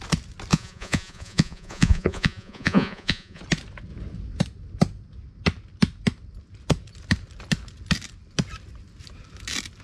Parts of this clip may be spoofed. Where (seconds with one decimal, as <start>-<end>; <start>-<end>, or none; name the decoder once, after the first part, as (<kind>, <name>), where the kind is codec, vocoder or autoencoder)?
0.5-3.4 (vocoder, Vocos)